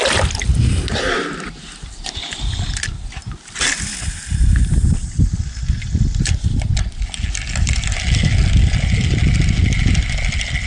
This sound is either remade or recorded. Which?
recorded